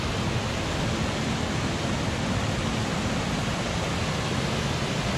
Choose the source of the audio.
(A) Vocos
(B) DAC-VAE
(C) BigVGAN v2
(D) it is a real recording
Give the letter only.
D